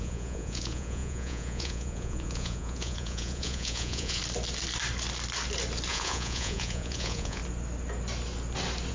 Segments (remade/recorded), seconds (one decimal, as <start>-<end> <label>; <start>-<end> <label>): 0.0-4.2 remade; 4.2-5.9 recorded; 5.9-7.4 remade; 7.4-8.9 recorded